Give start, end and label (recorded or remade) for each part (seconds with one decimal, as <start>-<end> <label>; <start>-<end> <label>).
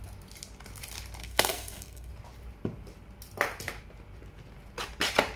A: 0.0-1.2 recorded; 1.2-2.1 remade; 2.1-5.4 recorded